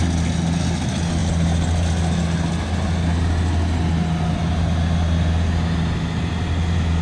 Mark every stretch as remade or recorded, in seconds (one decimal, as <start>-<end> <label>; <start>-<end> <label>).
0.0-7.0 recorded